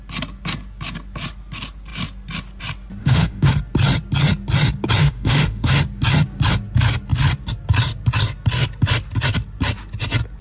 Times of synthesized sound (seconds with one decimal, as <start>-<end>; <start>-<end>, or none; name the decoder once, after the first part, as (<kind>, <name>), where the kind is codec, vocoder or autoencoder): 3.0-3.5 (autoencoder, DAC-VAE); 5.0-5.8